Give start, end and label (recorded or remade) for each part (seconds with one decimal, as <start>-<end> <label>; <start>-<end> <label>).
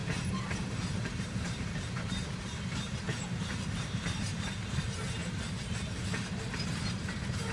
0.0-7.5 remade